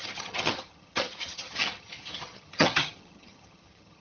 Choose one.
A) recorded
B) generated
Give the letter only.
B